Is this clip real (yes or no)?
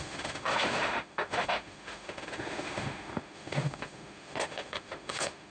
no